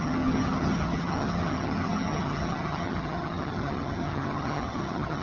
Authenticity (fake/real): fake